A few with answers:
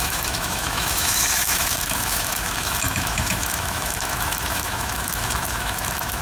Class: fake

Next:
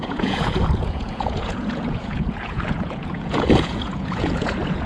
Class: fake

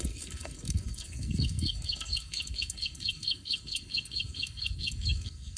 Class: fake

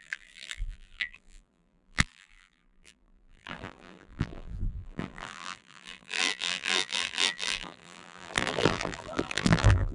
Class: fake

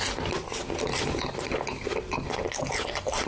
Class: real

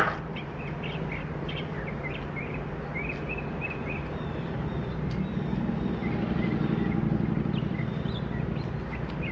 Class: real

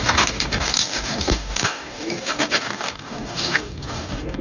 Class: fake